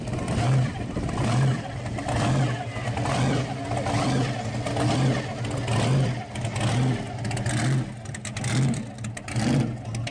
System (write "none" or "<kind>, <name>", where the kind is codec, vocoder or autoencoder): none